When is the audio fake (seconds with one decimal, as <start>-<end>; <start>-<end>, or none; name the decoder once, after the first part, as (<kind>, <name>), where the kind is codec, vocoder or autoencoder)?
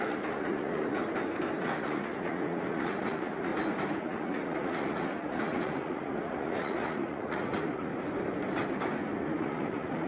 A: 0.0-1.0 (vocoder, Vocos); 1.6-3.5; 4.0-7.9; 9.2-10.1